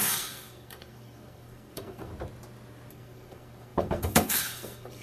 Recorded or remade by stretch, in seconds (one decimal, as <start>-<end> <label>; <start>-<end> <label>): 0.0-2.1 remade; 2.1-2.9 recorded; 2.9-5.0 remade